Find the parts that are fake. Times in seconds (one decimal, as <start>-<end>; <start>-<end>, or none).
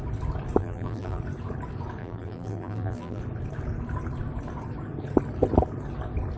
0.6-1.2; 2.0-3.2